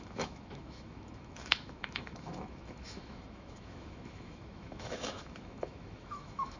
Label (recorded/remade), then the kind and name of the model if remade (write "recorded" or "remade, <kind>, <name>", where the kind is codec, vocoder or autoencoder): remade, autoencoder, DAC-VAE